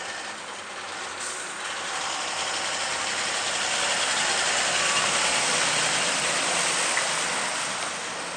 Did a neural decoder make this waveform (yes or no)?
no